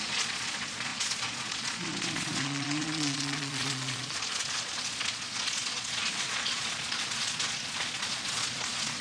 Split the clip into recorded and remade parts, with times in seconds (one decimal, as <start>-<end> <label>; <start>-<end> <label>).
0.0-9.0 remade